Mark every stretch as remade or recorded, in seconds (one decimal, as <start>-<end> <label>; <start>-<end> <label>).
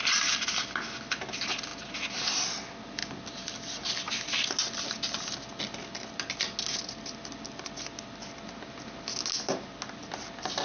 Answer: 0.0-10.6 recorded